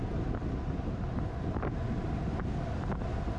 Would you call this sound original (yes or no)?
yes